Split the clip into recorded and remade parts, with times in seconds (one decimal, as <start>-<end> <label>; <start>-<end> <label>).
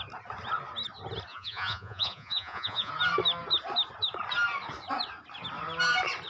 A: 0.0-1.3 recorded; 1.3-2.9 remade; 2.9-6.3 recorded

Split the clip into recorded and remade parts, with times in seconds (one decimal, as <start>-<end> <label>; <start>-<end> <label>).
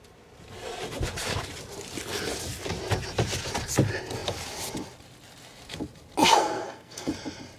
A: 0.0-6.2 recorded; 6.2-7.1 remade; 7.1-7.6 recorded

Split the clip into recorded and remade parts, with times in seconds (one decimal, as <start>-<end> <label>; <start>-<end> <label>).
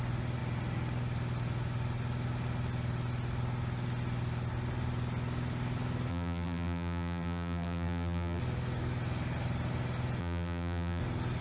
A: 0.0-6.1 recorded; 6.1-8.4 remade; 8.4-10.2 recorded; 10.2-11.0 remade; 11.0-11.4 recorded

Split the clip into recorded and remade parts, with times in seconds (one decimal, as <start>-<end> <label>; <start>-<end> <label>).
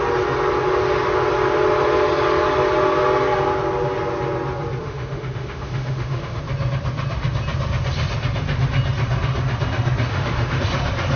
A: 0.0-4.8 recorded; 4.8-6.4 remade; 6.4-10.1 recorded; 10.1-10.6 remade; 10.6-11.2 recorded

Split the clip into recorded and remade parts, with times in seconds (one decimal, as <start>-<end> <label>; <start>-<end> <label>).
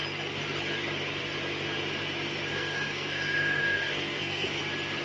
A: 0.0-2.5 recorded; 2.5-4.6 remade; 4.6-5.0 recorded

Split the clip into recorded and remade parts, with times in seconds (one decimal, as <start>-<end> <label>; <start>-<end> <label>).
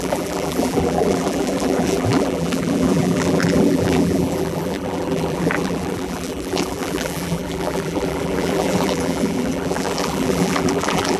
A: 0.0-11.2 remade